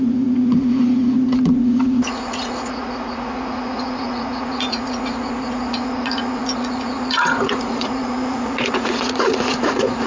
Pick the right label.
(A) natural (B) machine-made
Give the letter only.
B